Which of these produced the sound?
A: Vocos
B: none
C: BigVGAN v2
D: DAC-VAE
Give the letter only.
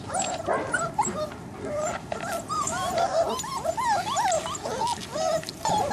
B